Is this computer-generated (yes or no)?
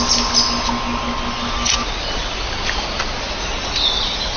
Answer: no